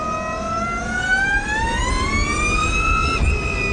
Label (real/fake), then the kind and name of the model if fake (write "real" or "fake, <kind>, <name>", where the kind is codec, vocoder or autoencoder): real